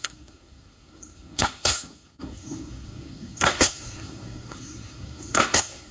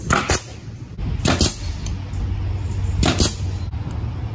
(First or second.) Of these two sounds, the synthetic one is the first